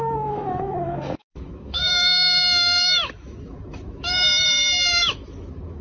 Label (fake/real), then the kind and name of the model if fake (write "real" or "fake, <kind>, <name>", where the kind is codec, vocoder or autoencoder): fake, autoencoder, DAC-VAE